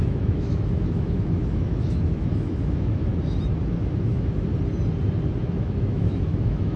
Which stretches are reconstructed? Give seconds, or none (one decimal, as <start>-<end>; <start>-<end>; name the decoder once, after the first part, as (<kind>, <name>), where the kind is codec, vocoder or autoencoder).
0.0-3.1 (autoencoder, DAC-VAE); 3.8-4.5; 5.4-6.8